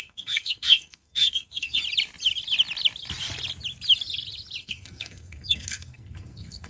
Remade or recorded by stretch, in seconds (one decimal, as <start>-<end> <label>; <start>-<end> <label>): 0.0-1.8 remade; 1.8-4.6 recorded; 4.6-6.7 remade